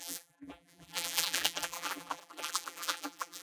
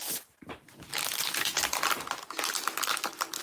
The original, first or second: second